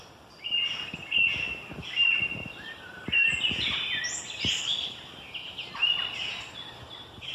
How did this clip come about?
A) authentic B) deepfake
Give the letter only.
A